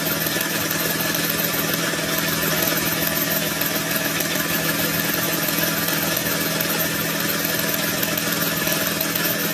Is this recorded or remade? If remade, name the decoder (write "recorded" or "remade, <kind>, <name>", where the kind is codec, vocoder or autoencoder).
recorded